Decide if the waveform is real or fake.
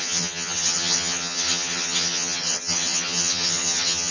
fake